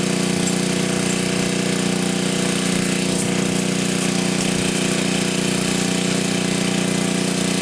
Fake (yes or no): no